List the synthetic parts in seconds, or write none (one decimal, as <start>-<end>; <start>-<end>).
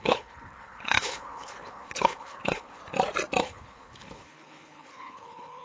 0.0-2.8; 3.4-5.6